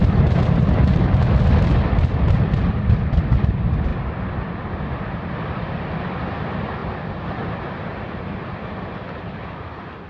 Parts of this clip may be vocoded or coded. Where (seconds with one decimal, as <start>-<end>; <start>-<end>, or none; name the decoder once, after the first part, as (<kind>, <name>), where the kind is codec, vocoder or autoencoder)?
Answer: none